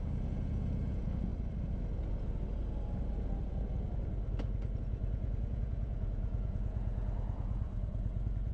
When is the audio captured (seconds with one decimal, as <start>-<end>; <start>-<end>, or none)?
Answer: 1.3-4.8